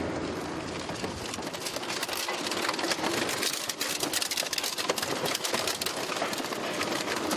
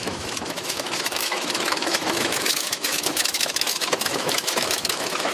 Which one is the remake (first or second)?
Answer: second